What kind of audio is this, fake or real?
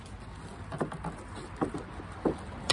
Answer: real